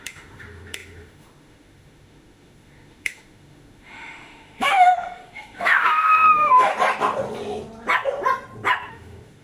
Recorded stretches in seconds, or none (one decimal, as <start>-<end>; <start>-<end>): 6.7-8.9